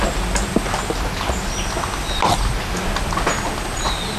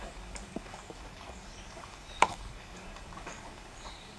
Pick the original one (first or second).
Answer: first